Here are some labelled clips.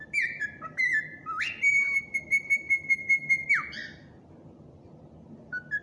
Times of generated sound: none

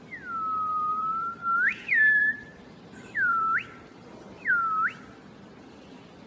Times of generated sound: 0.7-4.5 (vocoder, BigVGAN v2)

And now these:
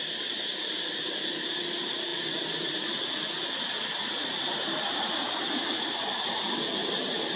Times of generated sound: none

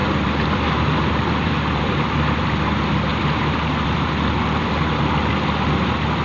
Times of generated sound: 0.0-2.2 (vocoder, BigVGAN v2); 3.1-4.8

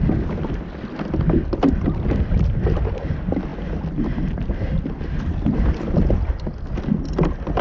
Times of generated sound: none

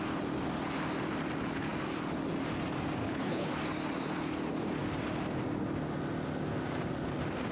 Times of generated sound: 3.0-3.5 (codec, HILCodec)

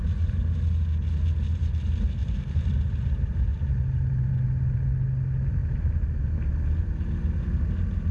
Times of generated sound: 2.2-2.7 (vocoder, BigVGAN v2); 5.6-6.5